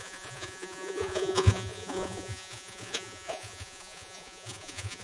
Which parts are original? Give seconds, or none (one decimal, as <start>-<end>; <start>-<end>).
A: none